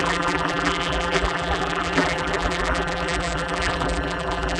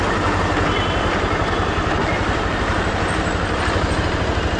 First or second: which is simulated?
first